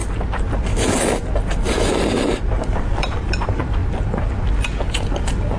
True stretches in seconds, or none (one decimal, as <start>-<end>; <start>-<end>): 0.0-5.6